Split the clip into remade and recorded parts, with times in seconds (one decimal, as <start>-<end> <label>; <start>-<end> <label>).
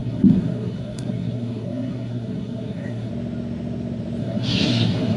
0.0-3.1 remade; 3.1-4.2 recorded; 4.2-5.2 remade